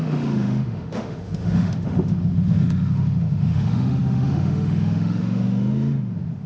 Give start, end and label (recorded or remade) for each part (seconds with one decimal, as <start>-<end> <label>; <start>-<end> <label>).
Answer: 0.0-6.5 remade